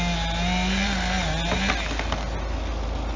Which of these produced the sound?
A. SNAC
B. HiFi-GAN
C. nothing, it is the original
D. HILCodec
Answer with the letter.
C